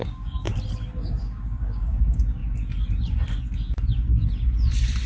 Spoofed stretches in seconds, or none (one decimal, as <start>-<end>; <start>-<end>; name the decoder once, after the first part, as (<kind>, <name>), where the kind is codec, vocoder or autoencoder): 0.0-0.5 (codec, DAC); 1.2-2.4